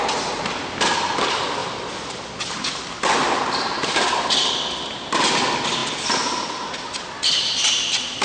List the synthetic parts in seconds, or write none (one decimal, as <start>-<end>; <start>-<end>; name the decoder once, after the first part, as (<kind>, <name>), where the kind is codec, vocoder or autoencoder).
none